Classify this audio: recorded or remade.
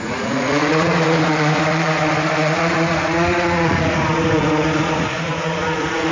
remade